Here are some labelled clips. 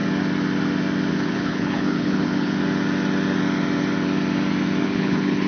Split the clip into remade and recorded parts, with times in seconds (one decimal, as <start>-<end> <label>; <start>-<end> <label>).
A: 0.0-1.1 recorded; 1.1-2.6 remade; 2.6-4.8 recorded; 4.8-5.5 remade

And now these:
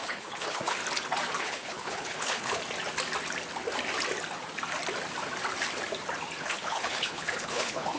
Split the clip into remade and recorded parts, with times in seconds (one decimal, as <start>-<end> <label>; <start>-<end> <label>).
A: 0.0-0.8 remade; 0.8-1.4 recorded; 1.4-2.6 remade; 2.6-6.4 recorded; 6.4-8.0 remade

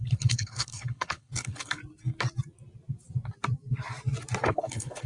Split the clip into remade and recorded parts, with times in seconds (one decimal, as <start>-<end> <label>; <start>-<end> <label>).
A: 0.0-1.8 remade; 1.8-4.5 recorded; 4.5-5.1 remade

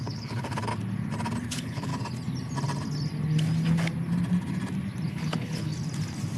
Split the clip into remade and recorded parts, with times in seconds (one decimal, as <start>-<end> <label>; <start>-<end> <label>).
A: 0.0-0.7 remade; 0.7-1.5 recorded; 1.5-1.9 remade; 1.9-5.1 recorded; 5.1-5.7 remade; 5.7-6.4 recorded

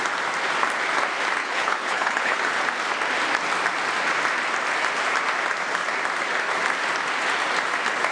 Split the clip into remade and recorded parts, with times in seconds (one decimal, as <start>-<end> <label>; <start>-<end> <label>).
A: 0.0-1.4 recorded; 1.4-2.4 remade; 2.4-8.1 recorded

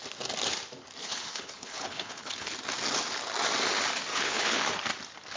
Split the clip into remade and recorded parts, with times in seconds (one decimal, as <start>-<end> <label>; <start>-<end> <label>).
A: 0.0-1.0 recorded; 1.0-2.5 remade; 2.5-4.1 recorded; 4.1-4.6 remade; 4.6-5.4 recorded